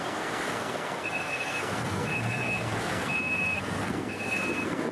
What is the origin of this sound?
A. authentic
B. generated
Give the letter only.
B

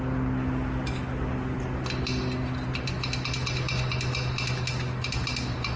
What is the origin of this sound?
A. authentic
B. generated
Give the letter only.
A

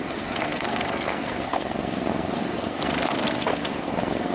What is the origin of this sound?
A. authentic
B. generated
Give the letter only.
B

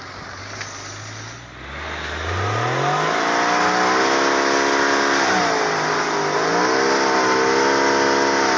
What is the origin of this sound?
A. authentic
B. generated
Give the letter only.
A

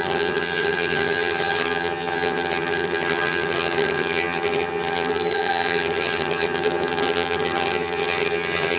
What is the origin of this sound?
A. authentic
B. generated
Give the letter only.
B